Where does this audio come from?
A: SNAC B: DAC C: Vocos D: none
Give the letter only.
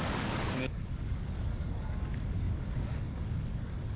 B